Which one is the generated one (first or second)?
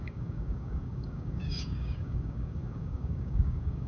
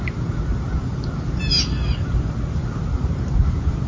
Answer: first